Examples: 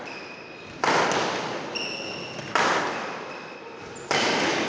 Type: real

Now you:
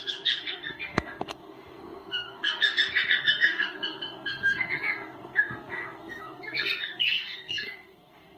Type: fake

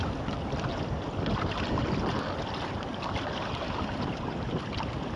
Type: real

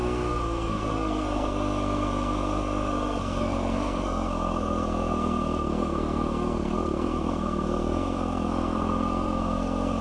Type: fake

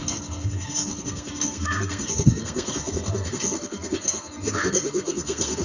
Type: fake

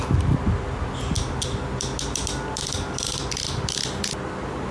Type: real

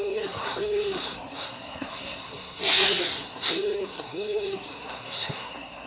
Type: fake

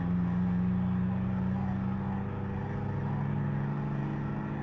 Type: real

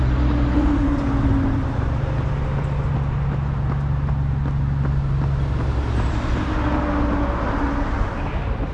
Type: real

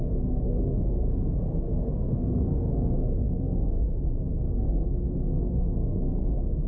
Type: fake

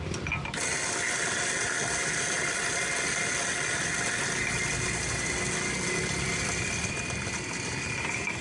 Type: real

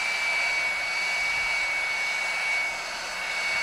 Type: real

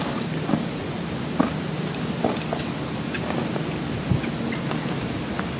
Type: real